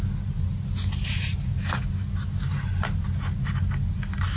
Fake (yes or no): no